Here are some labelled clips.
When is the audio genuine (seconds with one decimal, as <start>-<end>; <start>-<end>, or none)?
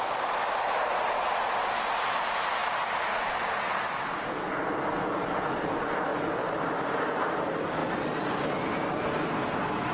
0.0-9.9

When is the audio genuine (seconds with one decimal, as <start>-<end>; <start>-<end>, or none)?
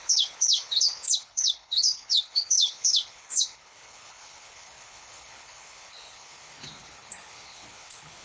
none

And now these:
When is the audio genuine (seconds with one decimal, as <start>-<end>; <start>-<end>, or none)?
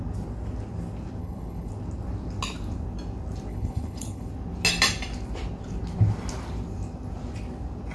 0.0-1.2; 1.7-3.5; 4.3-7.9